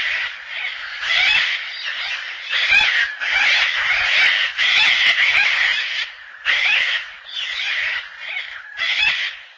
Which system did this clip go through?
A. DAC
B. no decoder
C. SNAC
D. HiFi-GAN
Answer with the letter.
B